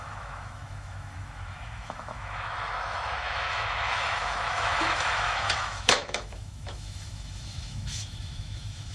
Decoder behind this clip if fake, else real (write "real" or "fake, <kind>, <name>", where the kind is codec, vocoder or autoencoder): fake, autoencoder, DAC-VAE